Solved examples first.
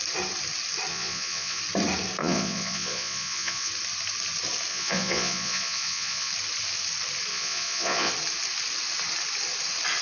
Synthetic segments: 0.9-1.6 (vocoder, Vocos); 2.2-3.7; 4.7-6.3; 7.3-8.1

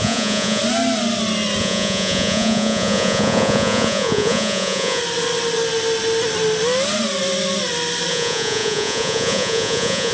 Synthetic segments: 0.0-0.6 (vocoder, Vocos); 1.6-5.0; 8.1-10.1

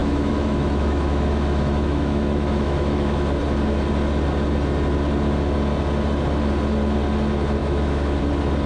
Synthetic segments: 0.0-3.4 (autoencoder, DAC-VAE); 7.6-8.2

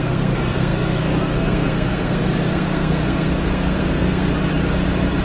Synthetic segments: 0.0-4.3 (codec, SNAC)

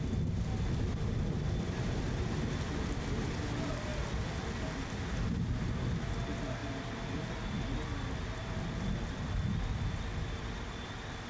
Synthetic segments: none

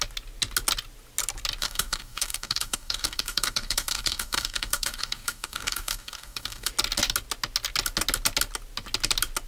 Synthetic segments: 1.6-6.7 (codec, DAC)